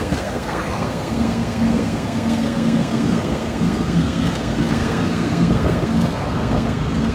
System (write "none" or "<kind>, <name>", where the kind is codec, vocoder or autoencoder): codec, SNAC